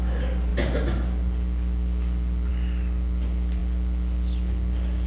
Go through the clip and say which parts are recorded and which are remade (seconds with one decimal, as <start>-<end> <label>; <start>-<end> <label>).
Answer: 0.0-5.1 recorded